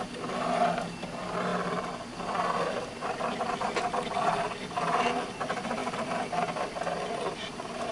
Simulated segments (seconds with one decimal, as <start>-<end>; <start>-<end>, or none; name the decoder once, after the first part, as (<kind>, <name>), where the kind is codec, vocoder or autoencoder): none